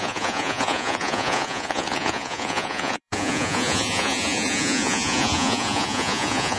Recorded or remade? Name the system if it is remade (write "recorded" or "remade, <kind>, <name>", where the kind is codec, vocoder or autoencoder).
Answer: remade, vocoder, Vocos